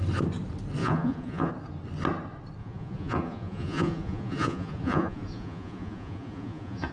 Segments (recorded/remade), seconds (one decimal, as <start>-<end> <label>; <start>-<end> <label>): 0.0-0.8 recorded; 0.8-1.5 remade; 1.5-2.6 recorded; 2.6-6.9 remade